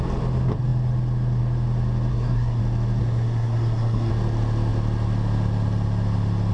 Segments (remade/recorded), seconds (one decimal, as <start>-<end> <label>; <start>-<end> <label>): 0.0-2.1 recorded; 2.1-2.6 remade; 2.6-3.0 recorded; 3.0-4.1 remade; 4.1-6.5 recorded